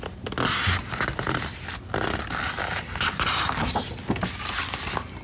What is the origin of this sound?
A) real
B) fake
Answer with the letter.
A